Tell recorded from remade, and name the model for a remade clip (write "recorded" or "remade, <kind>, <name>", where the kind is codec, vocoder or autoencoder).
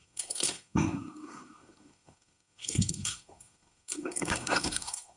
remade, codec, SNAC